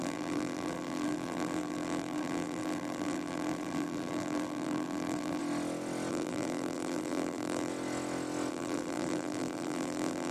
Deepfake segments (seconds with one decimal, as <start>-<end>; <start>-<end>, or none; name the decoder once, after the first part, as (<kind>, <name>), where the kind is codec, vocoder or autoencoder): 0.0-5.4 (vocoder, BigVGAN v2); 6.1-7.7; 8.5-10.3